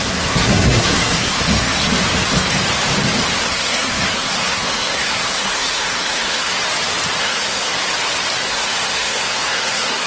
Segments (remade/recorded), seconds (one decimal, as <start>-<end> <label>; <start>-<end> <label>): 0.0-1.9 remade; 1.9-3.4 recorded; 3.4-6.5 remade; 6.5-7.2 recorded; 7.2-7.7 remade; 7.7-8.4 recorded; 8.4-10.1 remade

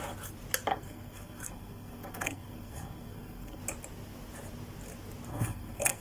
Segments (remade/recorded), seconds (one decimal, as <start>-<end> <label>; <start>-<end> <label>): 0.0-0.7 recorded; 0.7-3.6 remade; 3.6-5.3 recorded; 5.3-6.0 remade

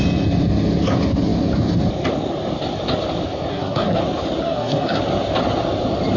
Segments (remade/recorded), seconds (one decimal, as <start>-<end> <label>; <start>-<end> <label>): 0.0-3.5 recorded; 3.5-4.0 remade; 4.0-4.4 recorded; 4.4-5.0 remade; 5.0-6.2 recorded

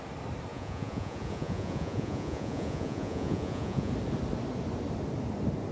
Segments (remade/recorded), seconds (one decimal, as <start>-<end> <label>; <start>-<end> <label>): 0.0-0.5 recorded; 0.5-3.9 remade; 3.9-5.7 recorded

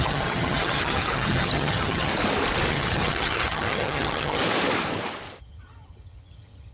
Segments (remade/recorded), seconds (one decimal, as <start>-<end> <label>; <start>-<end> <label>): 0.0-2.1 remade; 2.1-2.7 recorded; 2.7-4.4 remade; 4.4-5.4 recorded; 5.4-6.7 remade

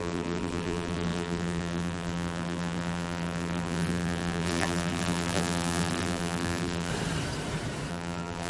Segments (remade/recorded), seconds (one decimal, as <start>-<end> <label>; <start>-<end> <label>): 0.0-6.9 remade; 6.9-7.9 recorded; 7.9-8.5 remade